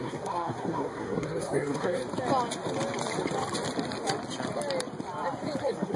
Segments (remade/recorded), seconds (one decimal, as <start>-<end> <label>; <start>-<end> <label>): 0.0-2.0 remade; 2.0-5.6 recorded; 5.6-6.0 remade

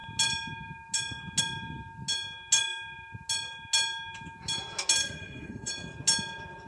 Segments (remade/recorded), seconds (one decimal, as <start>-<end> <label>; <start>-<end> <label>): 0.0-5.0 recorded; 5.0-5.7 remade; 5.7-6.7 recorded

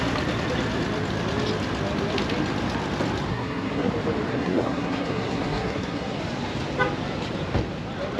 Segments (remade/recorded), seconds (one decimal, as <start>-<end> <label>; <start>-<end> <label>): 0.0-3.3 recorded; 3.3-3.9 remade; 3.9-4.3 recorded; 4.3-6.2 remade; 6.2-8.2 recorded

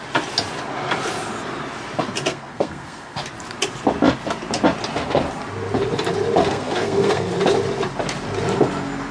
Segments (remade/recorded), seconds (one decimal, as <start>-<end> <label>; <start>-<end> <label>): 0.0-2.3 recorded; 2.3-3.2 remade; 3.2-6.4 recorded; 6.4-7.3 remade; 7.3-9.1 recorded

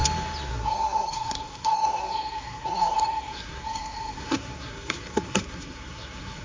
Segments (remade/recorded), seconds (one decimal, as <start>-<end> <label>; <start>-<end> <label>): 0.0-0.5 recorded; 0.5-6.4 remade

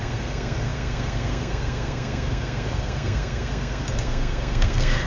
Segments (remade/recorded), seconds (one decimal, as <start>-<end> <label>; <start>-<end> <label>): 0.0-5.1 remade

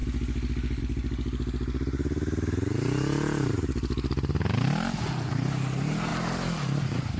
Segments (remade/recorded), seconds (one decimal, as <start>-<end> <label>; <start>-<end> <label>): 0.0-7.2 recorded